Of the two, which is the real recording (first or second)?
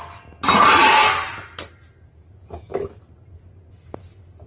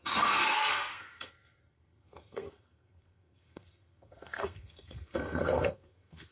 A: first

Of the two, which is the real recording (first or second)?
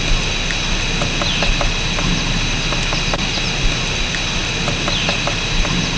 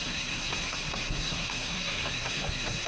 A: first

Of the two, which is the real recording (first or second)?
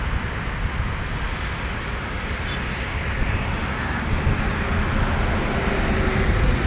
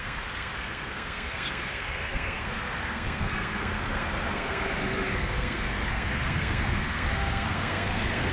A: first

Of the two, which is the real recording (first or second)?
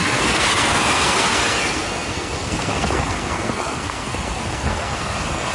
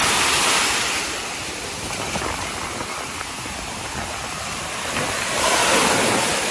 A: second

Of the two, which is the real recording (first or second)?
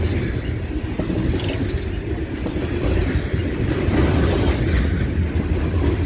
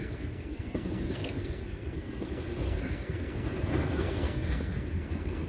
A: first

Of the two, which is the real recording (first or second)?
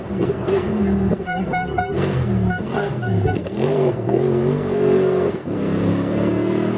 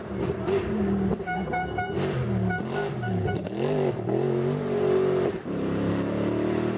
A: second